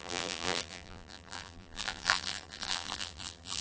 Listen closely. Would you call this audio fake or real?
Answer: fake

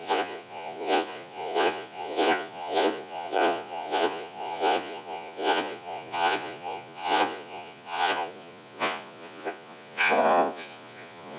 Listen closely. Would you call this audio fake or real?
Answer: fake